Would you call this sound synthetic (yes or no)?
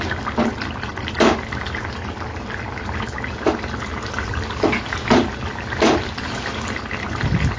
no